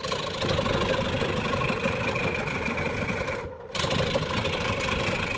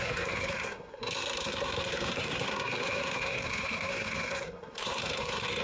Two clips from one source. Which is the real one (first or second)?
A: first